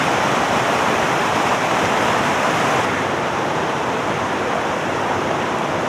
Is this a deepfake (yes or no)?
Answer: yes